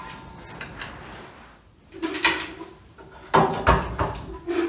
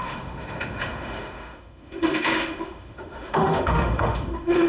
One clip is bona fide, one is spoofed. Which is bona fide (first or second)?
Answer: first